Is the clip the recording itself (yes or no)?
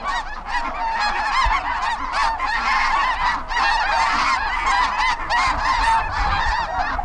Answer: yes